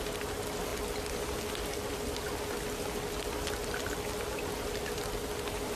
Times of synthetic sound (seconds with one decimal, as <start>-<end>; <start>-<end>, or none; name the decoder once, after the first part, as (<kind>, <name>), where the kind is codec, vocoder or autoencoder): none